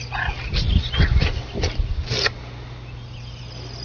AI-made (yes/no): no